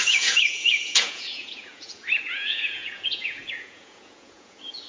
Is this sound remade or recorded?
remade